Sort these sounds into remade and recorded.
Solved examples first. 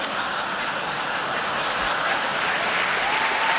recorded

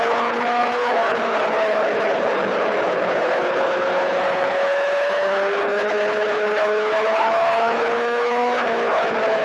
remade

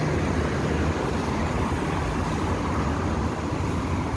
recorded